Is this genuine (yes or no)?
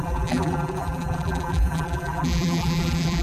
no